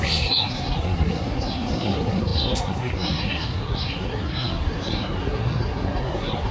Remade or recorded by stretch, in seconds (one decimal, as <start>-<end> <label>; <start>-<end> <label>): 0.0-6.5 remade